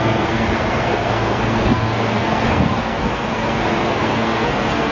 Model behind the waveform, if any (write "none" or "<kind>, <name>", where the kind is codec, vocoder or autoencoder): codec, SNAC